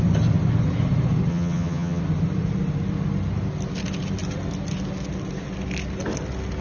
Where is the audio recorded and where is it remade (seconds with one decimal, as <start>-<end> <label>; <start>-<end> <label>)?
0.0-1.3 recorded; 1.3-2.0 remade; 2.0-6.6 recorded